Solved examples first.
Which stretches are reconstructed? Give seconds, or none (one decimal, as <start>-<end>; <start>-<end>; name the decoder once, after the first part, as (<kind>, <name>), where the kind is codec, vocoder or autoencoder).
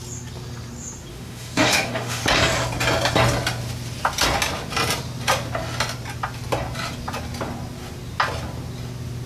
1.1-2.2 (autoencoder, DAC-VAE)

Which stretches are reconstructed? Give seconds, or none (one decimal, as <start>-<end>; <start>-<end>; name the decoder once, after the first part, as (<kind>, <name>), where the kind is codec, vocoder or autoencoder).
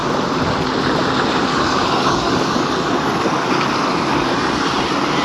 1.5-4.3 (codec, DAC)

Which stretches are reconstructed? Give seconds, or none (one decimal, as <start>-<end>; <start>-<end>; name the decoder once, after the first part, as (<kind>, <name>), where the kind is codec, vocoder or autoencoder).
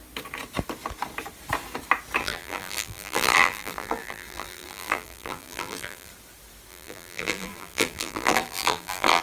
2.2-6.1 (vocoder, BigVGAN v2); 6.7-9.2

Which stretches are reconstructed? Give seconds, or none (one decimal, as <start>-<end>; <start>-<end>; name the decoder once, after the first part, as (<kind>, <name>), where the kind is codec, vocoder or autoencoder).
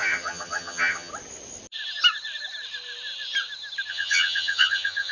0.0-1.1 (vocoder, HiFi-GAN); 3.9-5.1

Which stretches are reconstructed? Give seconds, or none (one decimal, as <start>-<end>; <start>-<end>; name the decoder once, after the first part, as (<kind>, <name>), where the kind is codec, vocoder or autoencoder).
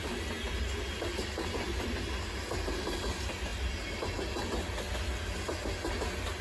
none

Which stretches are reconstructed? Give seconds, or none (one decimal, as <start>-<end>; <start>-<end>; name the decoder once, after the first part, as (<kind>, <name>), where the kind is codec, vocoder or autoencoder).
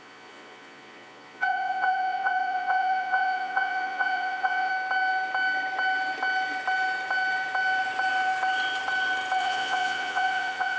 0.0-4.7 (vocoder, Vocos); 9.4-10.8